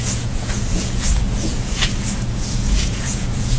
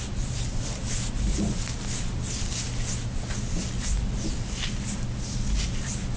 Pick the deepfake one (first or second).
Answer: first